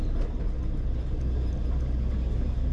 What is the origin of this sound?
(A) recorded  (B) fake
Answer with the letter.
A